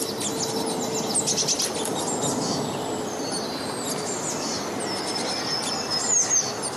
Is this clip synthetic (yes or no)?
no